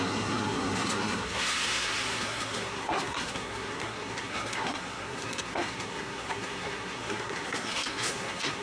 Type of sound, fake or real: fake